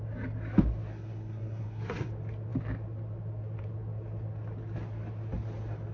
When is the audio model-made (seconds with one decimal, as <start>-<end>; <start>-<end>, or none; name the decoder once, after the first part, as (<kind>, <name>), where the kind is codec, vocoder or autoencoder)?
0.9-2.1 (codec, SNAC)